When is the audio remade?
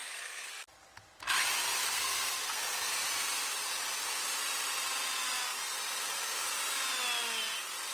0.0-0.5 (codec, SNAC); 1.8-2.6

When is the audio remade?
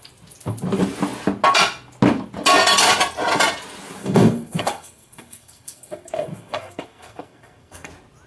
4.0-7.9 (codec, SNAC)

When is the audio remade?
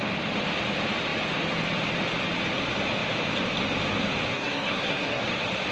4.3-5.2 (codec, SNAC)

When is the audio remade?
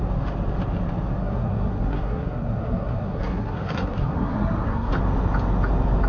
1.2-4.9 (codec, SNAC)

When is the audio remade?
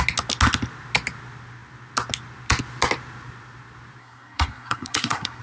4.0-5.4 (codec, SNAC)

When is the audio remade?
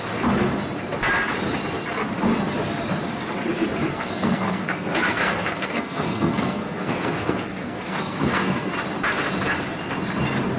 3.9-8.7 (codec, SNAC)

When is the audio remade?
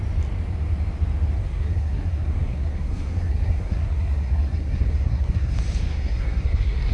1.4-5.5 (codec, SNAC); 5.9-6.9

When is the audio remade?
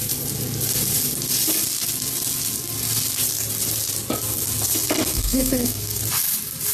5.1-6.0 (codec, SNAC)